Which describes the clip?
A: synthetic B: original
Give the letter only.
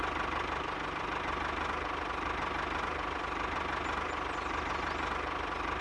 B